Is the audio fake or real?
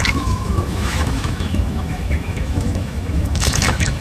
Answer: fake